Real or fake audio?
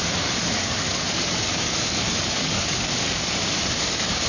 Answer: fake